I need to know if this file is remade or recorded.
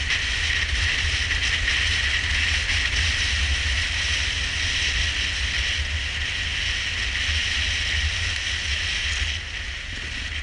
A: recorded